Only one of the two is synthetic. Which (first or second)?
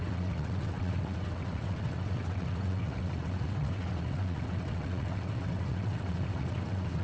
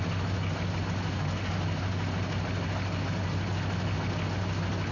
first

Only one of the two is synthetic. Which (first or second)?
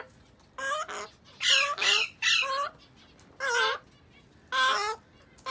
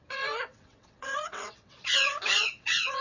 second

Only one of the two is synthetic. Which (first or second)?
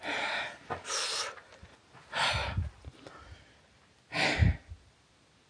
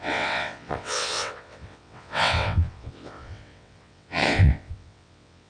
second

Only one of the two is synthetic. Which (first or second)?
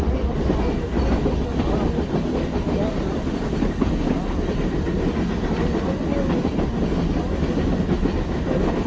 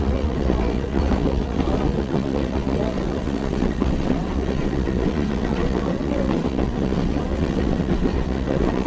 second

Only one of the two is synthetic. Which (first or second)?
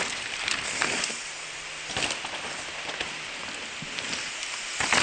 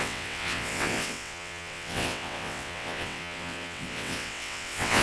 second